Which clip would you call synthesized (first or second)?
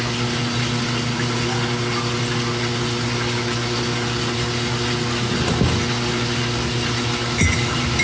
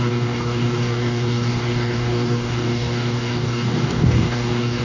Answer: second